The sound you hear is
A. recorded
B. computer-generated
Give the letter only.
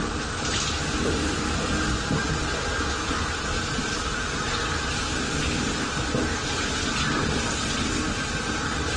A